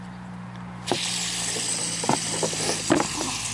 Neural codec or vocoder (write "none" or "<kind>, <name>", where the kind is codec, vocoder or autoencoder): none